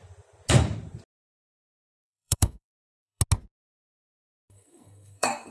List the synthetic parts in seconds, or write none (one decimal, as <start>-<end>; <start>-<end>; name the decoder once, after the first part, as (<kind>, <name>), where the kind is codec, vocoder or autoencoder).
2.0-3.2 (codec, SNAC); 3.8-5.5